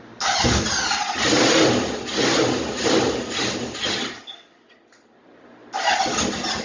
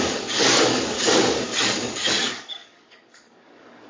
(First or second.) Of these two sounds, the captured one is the first